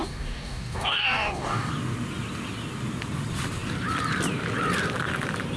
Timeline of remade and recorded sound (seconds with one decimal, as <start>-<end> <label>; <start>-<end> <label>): 0.0-1.7 remade; 1.7-5.6 recorded